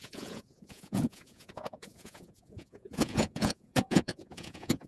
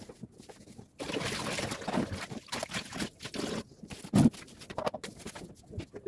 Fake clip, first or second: first